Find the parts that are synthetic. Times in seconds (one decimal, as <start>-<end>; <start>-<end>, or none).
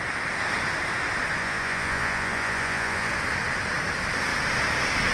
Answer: 1.4-3.1